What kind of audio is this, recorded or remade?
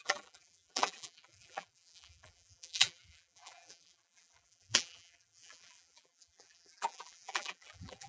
remade